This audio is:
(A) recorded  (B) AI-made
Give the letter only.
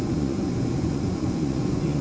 B